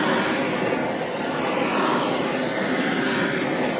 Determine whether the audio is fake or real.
real